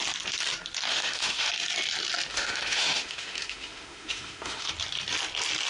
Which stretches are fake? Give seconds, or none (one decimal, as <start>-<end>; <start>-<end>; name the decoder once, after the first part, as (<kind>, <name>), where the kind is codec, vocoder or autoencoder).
0.9-1.5 (autoencoder, DAC-VAE); 2.3-4.7